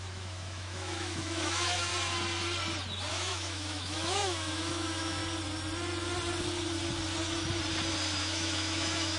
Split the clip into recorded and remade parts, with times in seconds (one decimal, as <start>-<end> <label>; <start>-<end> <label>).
0.0-1.9 remade; 1.9-3.1 recorded; 3.1-5.2 remade; 5.2-8.2 recorded; 8.2-9.2 remade